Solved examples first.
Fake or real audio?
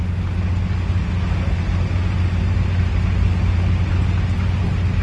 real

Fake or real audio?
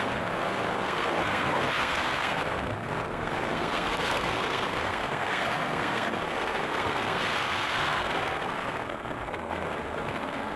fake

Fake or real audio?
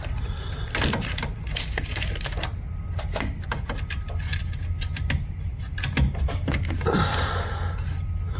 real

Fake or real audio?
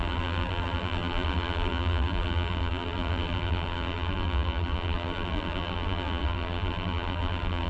fake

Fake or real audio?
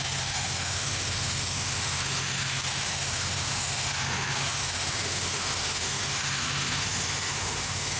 fake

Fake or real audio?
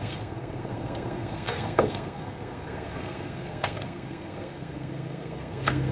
fake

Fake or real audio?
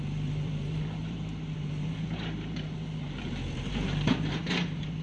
fake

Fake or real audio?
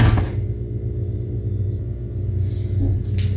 real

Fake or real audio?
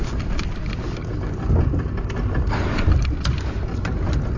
real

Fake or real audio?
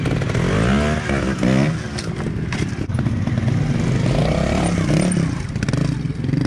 real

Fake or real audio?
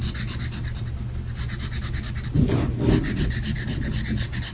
real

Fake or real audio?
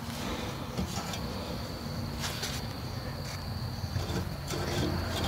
real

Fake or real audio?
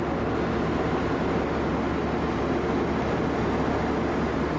real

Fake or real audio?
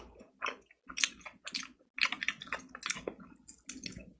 real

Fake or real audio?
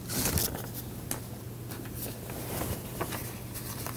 real